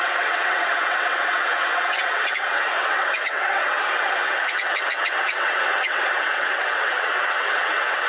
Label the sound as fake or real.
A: fake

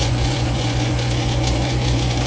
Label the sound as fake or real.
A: fake